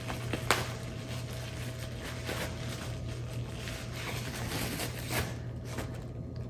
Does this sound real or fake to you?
real